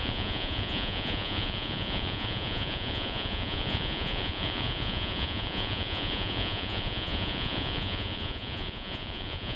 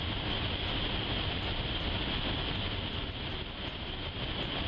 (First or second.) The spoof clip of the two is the first